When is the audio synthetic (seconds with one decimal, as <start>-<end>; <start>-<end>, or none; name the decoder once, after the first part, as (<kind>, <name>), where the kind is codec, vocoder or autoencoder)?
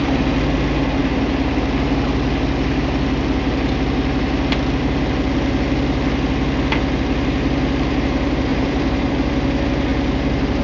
8.5-9.1 (vocoder, BigVGAN v2)